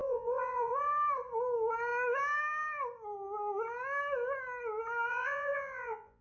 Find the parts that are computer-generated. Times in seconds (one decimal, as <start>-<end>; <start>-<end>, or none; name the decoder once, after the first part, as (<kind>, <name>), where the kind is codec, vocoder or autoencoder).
0.0-0.7 (vocoder, Vocos); 5.1-6.2